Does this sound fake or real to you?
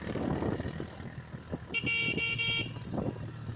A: real